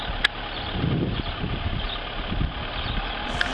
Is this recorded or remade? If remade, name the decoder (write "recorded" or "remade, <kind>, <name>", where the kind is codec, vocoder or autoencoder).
recorded